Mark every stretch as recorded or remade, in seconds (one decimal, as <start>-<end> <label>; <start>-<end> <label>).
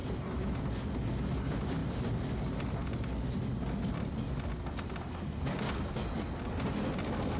0.0-7.4 recorded